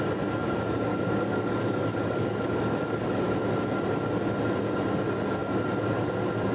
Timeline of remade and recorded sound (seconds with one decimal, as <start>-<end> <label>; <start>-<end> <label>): 0.0-0.9 recorded; 0.9-3.2 remade; 3.2-6.5 recorded